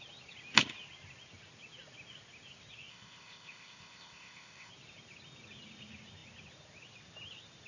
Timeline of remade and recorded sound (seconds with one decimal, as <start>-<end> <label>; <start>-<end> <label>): 0.0-2.9 recorded; 2.9-4.7 remade; 4.7-7.7 recorded